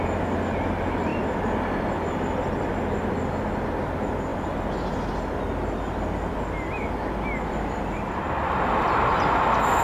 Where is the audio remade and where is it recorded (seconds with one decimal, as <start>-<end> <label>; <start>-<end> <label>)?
0.0-9.8 recorded